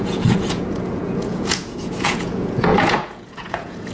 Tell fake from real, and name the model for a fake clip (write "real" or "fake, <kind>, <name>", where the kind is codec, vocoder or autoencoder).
fake, vocoder, Vocos